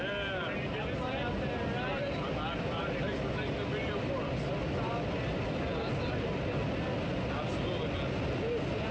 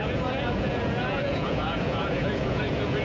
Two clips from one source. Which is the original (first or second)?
first